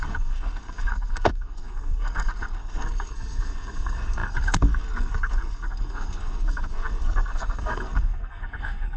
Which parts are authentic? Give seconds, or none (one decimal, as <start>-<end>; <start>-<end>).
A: none